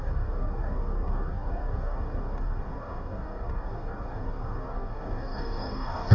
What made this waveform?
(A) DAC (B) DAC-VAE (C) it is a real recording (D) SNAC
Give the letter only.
A